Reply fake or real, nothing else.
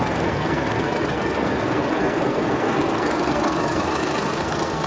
fake